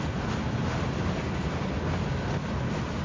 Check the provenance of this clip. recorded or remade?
recorded